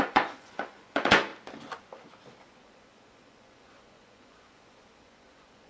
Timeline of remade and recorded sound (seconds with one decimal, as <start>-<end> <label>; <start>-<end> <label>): 0.0-1.3 remade; 1.3-2.4 recorded; 2.4-5.7 remade